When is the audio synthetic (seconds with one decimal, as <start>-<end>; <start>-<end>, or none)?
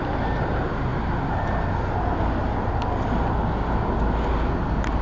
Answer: none